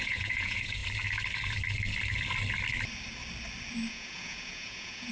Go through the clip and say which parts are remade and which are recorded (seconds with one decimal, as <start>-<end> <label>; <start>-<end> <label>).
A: 0.0-0.8 remade; 0.8-3.9 recorded; 3.9-5.1 remade